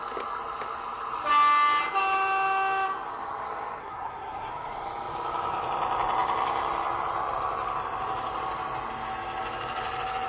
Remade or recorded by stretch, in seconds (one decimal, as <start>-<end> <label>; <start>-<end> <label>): 0.0-3.8 recorded; 3.8-4.5 remade; 4.5-10.3 recorded